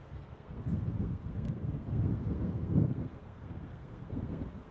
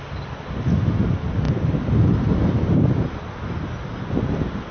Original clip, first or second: second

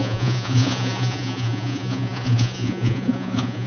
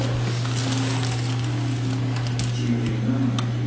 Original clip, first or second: second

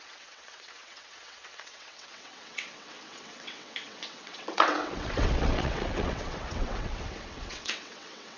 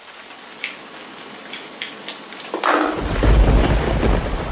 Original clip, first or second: second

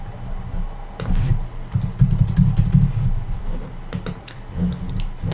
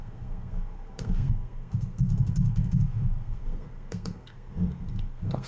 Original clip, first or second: first